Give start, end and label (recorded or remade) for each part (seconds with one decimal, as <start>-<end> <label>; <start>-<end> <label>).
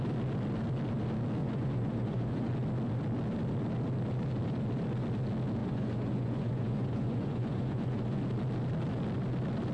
0.0-1.4 recorded; 1.4-2.5 remade; 2.5-5.6 recorded; 5.6-8.2 remade; 8.2-9.7 recorded